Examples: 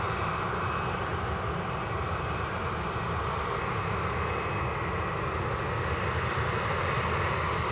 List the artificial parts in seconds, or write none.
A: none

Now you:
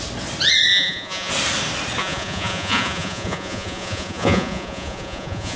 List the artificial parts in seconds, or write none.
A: 0.7-1.3 (vocoder, Vocos); 2.0-5.6

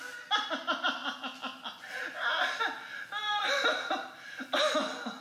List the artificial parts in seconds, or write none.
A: none